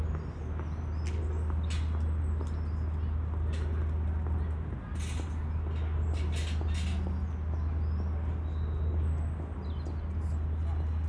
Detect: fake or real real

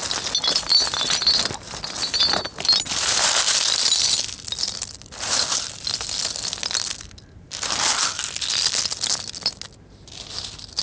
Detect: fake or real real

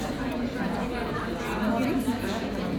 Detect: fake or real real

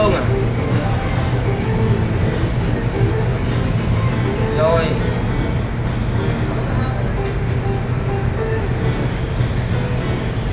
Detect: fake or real real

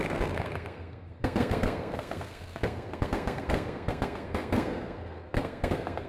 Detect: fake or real fake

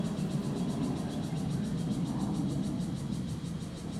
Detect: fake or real real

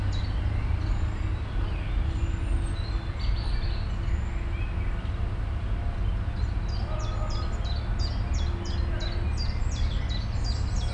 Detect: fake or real real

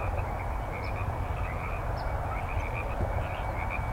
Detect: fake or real real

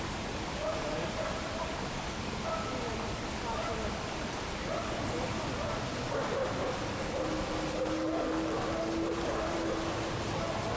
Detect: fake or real real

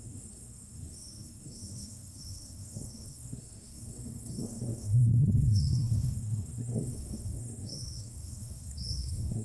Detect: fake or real fake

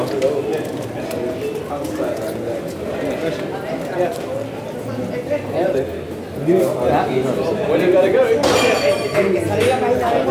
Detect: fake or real real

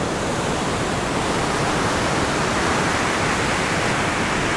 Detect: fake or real real